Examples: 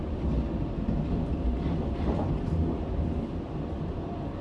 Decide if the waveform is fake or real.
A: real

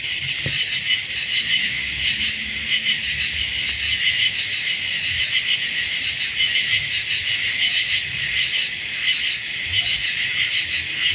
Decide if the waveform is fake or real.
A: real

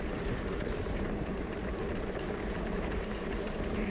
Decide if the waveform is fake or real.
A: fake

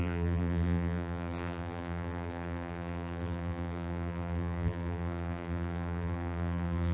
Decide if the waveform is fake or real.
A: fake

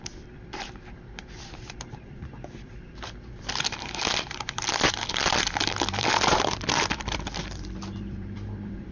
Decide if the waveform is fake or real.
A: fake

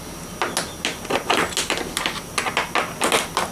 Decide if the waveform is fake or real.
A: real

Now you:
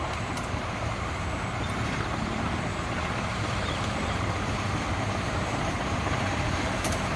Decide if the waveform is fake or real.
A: fake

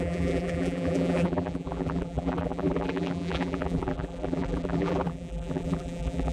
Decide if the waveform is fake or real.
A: fake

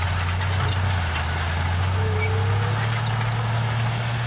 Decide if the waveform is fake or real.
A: real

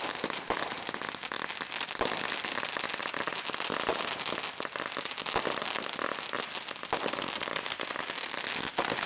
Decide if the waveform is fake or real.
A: real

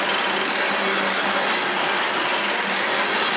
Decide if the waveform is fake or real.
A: real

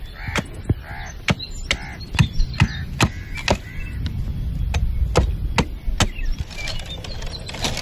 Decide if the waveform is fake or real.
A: real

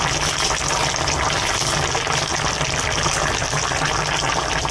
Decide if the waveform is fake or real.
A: real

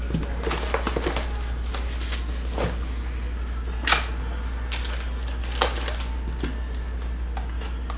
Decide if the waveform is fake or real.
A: real